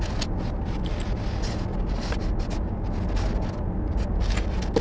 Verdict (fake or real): real